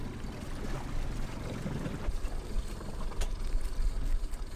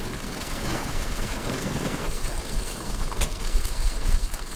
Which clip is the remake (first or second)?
second